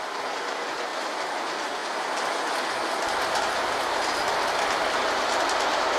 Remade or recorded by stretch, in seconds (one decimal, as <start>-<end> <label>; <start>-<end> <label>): 0.0-6.0 recorded